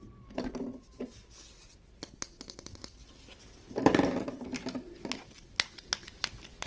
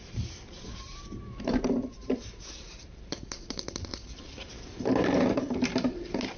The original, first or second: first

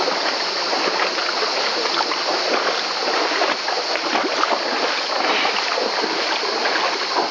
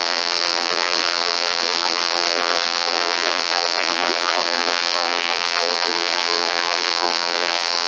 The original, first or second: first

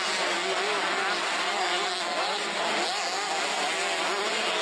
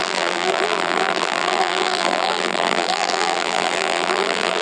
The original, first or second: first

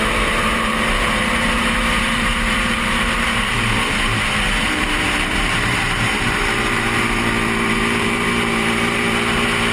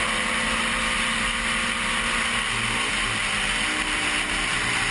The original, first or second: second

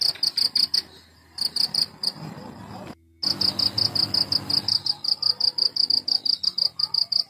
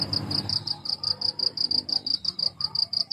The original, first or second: first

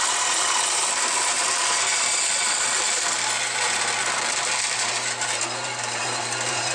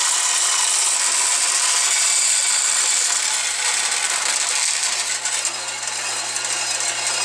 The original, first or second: second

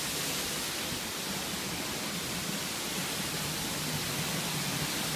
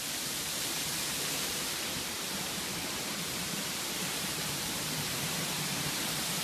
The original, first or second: first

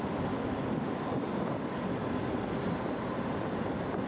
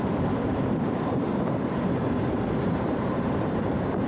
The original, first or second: first